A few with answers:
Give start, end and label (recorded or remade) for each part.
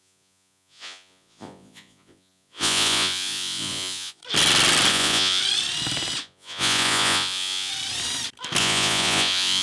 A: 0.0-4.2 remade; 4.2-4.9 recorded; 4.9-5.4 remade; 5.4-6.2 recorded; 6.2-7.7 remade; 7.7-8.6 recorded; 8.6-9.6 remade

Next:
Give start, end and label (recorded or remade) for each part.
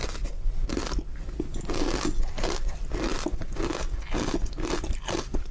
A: 0.0-5.5 recorded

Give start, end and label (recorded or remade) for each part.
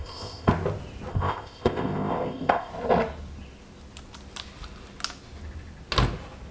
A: 0.0-0.5 remade; 0.5-1.1 recorded; 1.1-2.7 remade; 2.7-6.5 recorded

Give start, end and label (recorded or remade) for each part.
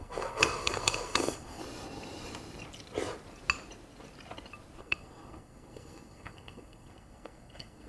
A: 0.0-1.6 remade; 1.6-4.8 recorded; 4.8-7.9 remade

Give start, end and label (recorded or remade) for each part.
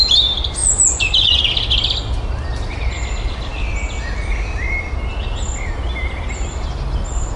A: 0.0-0.6 recorded; 0.6-1.4 remade; 1.4-7.4 recorded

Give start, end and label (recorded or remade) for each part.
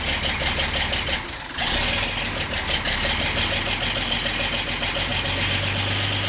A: 0.0-6.3 recorded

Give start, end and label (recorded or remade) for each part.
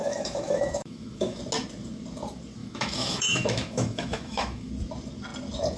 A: 0.0-1.4 remade; 1.4-2.6 recorded; 2.6-4.7 remade; 4.7-5.8 recorded